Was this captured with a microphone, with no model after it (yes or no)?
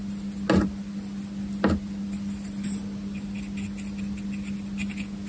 yes